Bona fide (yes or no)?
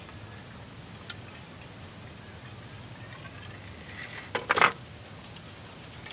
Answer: yes